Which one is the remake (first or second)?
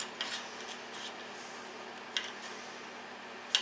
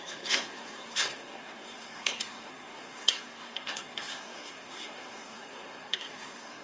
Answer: second